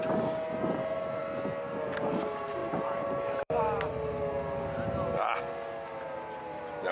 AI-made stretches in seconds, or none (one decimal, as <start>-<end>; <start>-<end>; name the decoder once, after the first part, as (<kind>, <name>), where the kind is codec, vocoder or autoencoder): 2.6-3.9 (vocoder, BigVGAN v2)